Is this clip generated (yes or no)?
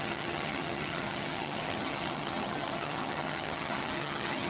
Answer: yes